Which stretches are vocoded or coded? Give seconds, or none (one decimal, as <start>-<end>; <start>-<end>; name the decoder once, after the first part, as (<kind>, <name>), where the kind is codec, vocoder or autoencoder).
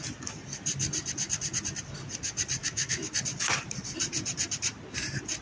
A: 2.6-3.1 (autoencoder, DAC-VAE)